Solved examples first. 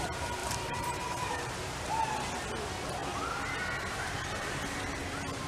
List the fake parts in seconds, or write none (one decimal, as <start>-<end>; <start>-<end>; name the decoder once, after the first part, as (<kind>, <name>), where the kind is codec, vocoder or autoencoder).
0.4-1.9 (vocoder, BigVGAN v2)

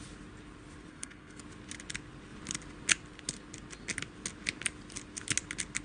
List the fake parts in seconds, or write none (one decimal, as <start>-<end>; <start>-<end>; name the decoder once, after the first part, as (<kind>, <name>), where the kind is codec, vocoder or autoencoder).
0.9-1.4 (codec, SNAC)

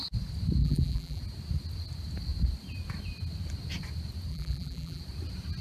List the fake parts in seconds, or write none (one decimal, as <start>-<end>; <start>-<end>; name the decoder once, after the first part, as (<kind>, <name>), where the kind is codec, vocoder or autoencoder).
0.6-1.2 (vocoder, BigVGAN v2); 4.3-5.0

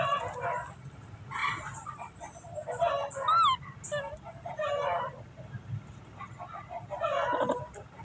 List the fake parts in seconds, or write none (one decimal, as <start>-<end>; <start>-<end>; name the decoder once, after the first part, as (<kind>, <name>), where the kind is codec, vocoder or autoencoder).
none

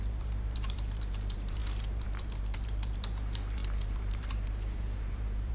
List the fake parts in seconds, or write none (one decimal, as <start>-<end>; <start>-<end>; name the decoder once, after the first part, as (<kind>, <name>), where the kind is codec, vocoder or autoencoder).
0.0-5.5 (vocoder, BigVGAN v2)

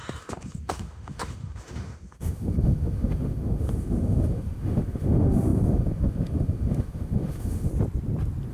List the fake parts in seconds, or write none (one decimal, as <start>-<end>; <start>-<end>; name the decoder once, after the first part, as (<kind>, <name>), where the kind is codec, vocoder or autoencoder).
0.0-7.7 (autoencoder, DAC-VAE)

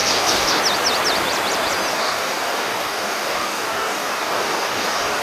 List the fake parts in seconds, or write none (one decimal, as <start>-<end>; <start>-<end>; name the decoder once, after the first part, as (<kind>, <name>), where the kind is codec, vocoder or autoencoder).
0.0-0.6 (codec, DAC); 1.9-5.2

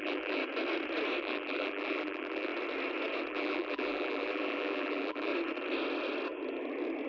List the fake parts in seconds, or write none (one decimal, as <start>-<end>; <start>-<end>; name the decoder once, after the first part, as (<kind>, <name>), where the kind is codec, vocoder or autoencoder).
0.0-0.4 (vocoder, BigVGAN v2); 1.2-2.5; 3.3-5.3